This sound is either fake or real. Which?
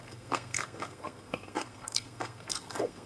fake